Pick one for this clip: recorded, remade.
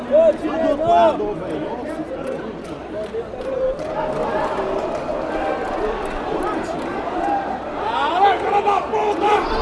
recorded